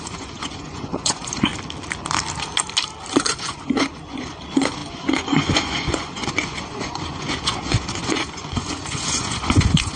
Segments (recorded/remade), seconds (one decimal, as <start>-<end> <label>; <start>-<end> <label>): 0.0-1.5 remade; 1.5-3.2 recorded; 3.2-10.0 remade